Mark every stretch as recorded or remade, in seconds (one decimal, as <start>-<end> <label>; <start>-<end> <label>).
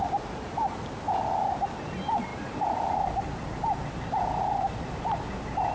0.0-0.8 remade; 0.8-2.3 recorded; 2.3-5.0 remade; 5.0-5.7 recorded